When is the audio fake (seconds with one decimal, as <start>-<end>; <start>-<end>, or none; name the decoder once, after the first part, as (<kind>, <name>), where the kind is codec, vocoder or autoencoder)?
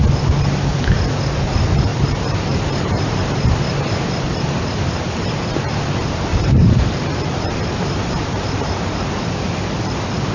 1.9-3.2 (vocoder, BigVGAN v2); 6.3-10.3